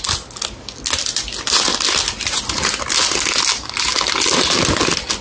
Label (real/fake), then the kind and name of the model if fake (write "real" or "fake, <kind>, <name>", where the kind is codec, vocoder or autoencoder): real